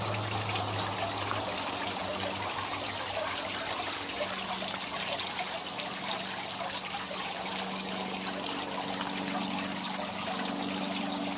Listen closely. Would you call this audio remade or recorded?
recorded